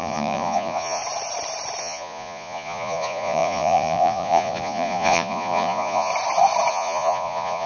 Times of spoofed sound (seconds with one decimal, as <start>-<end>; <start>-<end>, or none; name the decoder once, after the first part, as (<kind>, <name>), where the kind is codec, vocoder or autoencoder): 0.0-1.0 (vocoder, Vocos); 1.8-6.1; 6.7-7.7